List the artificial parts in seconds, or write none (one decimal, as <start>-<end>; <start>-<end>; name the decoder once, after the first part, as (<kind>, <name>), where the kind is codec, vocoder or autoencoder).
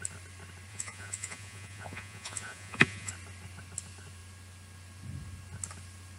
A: 0.7-3.1 (vocoder, Vocos)